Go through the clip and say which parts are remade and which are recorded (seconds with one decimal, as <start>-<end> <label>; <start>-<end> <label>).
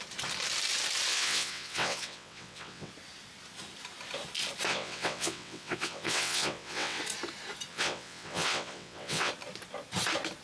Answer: 0.0-1.1 recorded; 1.1-2.9 remade; 2.9-4.7 recorded; 4.7-7.0 remade; 7.0-7.7 recorded; 7.7-9.3 remade; 9.3-10.4 recorded